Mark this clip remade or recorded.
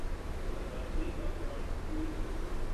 remade